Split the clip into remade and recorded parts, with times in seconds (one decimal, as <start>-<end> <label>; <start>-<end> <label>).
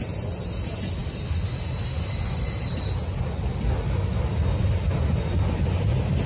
0.0-6.3 recorded